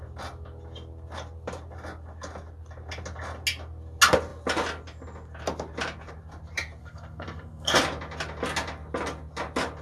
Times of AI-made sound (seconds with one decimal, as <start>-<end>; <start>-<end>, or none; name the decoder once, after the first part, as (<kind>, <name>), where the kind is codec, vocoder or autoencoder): 6.8-7.8 (codec, SNAC)